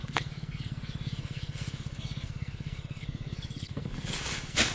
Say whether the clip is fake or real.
fake